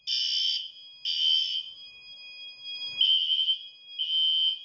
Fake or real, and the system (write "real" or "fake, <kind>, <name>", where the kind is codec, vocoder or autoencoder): real